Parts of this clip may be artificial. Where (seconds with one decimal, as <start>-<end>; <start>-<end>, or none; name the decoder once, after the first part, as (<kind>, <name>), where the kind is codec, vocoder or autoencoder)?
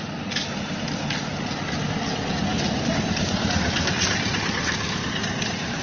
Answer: 2.5-3.4 (vocoder, BigVGAN v2)